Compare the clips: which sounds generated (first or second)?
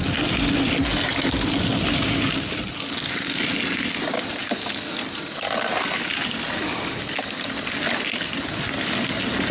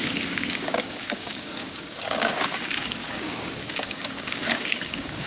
second